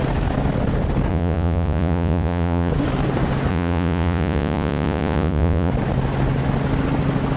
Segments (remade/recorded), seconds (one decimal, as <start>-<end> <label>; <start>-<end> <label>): 0.0-1.1 recorded; 1.1-2.7 remade; 2.7-3.5 recorded; 3.5-5.7 remade; 5.7-7.4 recorded